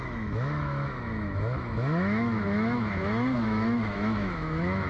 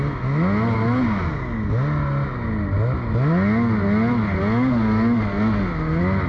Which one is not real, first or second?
first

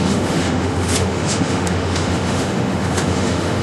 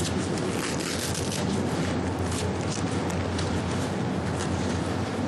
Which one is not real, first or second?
first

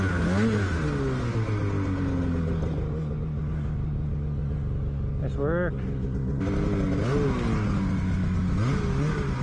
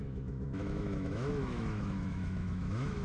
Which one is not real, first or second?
second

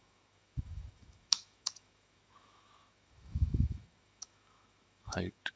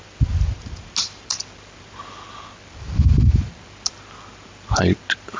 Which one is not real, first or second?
first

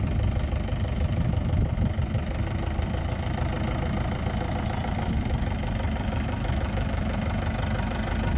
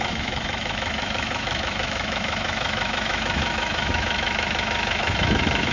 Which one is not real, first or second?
second